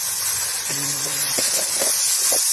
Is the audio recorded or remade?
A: remade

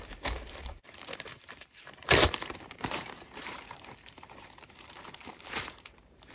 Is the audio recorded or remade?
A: remade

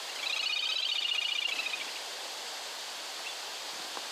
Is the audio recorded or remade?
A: recorded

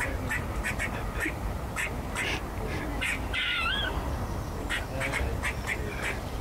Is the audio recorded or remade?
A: recorded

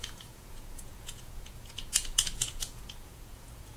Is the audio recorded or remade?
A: remade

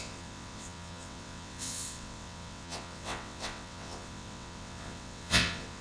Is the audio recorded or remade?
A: remade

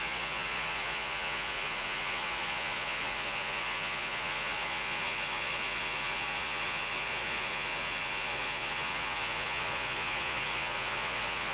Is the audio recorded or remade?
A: remade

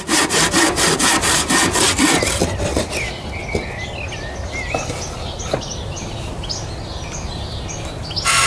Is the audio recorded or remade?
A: recorded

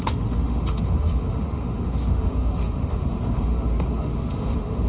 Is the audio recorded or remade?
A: remade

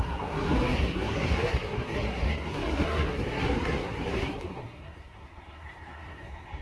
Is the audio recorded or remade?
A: remade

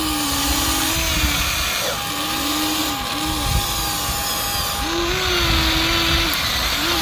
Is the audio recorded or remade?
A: recorded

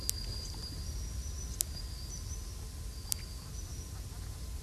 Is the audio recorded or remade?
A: recorded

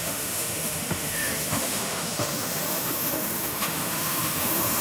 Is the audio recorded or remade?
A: remade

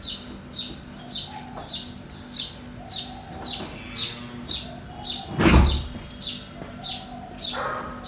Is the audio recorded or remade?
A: recorded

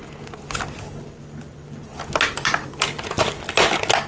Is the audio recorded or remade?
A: recorded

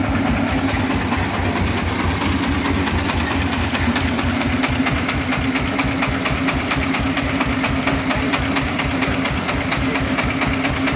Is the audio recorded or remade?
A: recorded